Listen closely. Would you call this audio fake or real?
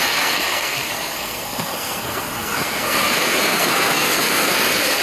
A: fake